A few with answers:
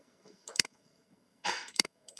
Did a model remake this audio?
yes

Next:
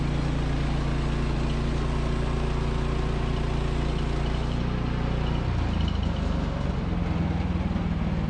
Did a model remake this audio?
no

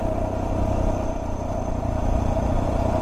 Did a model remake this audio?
no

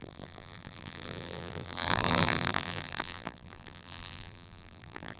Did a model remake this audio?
yes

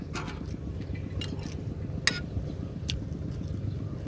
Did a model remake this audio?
no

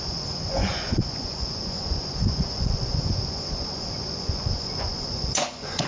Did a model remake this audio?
yes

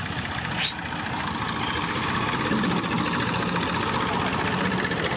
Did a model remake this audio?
no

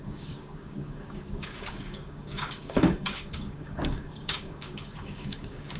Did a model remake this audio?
yes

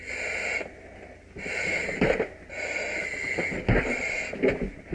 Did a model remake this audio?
no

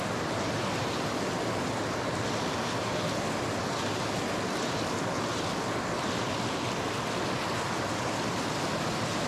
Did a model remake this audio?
no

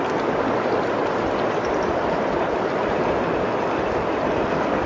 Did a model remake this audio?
no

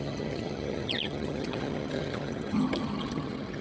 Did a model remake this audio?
yes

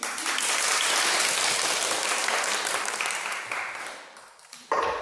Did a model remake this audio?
yes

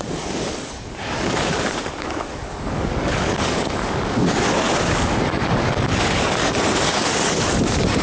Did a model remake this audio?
yes